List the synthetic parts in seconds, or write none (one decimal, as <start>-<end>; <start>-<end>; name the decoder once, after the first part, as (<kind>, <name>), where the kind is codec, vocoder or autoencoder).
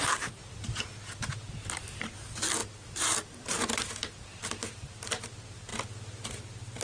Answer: none